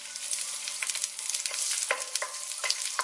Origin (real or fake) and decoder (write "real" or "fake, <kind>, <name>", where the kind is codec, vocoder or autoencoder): real